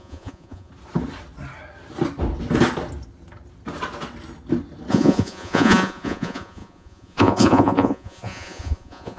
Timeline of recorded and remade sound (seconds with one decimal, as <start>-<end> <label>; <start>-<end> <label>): 0.0-0.7 remade; 0.7-4.9 recorded; 4.9-9.2 remade